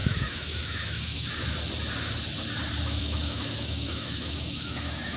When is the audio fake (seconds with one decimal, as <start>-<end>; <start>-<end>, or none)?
0.0-1.3; 3.0-5.2